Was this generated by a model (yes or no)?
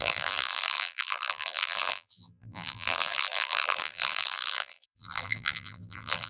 yes